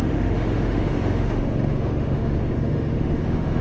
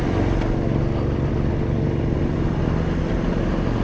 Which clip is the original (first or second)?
second